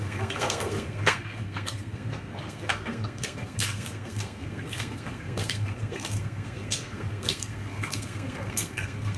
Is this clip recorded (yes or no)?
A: no